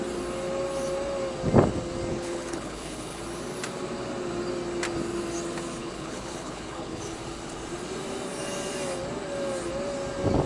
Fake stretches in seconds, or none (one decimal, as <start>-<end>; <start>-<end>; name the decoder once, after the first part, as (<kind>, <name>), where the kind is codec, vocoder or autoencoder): 2.1-3.2 (codec, HILCodec); 5.8-7.0